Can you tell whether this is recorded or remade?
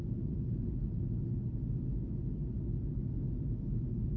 recorded